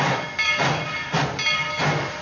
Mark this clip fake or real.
real